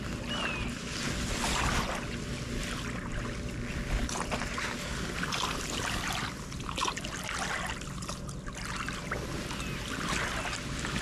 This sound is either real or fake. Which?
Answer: real